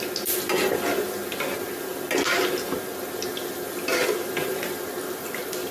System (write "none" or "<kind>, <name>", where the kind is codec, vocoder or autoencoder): none